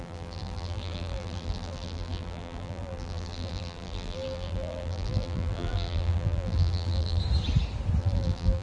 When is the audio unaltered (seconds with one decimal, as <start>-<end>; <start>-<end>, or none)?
7.2-8.0